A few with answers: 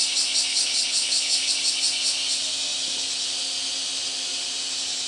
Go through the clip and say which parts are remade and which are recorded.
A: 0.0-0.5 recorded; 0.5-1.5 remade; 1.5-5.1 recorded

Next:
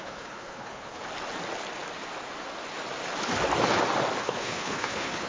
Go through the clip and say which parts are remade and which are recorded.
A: 0.0-1.1 remade; 1.1-4.2 recorded; 4.2-5.3 remade

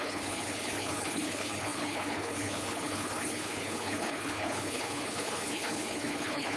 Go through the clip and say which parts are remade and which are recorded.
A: 0.0-6.6 remade

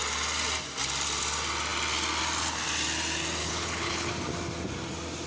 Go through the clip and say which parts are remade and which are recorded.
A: 0.0-3.4 recorded; 3.4-4.1 remade; 4.1-5.3 recorded